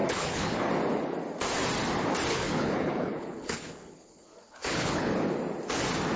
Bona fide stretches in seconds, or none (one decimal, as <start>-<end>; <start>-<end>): 0.7-2.3; 5.1-6.2